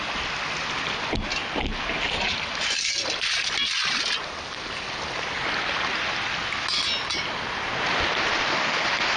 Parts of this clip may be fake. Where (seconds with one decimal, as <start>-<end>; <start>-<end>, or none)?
none